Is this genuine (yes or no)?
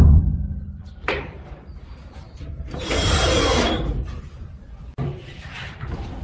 no